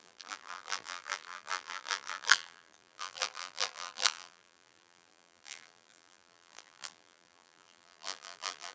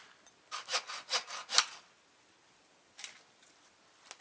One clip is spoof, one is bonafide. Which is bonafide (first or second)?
second